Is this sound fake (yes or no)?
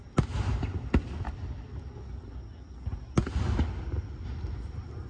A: no